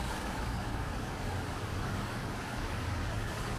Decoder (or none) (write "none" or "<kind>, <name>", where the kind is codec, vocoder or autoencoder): codec, DAC